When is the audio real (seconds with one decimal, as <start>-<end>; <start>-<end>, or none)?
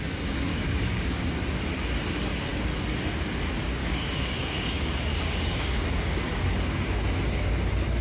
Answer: 0.0-0.5; 1.2-3.8; 7.0-8.0